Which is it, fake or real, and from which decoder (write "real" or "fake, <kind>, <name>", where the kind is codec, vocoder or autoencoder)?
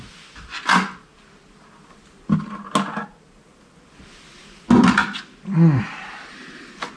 real